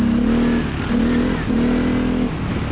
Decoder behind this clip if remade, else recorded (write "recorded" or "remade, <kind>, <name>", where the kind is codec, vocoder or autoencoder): recorded